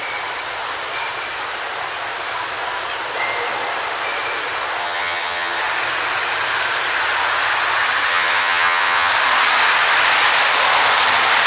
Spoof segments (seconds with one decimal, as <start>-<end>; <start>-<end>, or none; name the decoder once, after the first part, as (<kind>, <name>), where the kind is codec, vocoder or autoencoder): 4.8-5.6 (vocoder, HiFi-GAN); 8.1-9.1